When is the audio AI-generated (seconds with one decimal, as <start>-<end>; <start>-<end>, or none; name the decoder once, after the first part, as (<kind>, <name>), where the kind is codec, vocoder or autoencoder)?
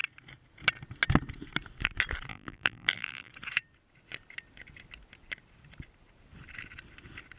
2.3-3.3 (vocoder, BigVGAN v2)